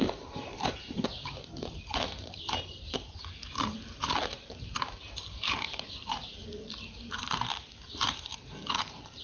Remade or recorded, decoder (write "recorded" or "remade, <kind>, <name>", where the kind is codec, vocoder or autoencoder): remade, vocoder, BigVGAN v2